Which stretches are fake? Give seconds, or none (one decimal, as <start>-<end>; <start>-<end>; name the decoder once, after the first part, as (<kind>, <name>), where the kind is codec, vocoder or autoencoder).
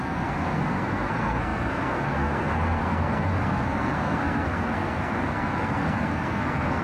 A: 0.0-6.8 (codec, SNAC)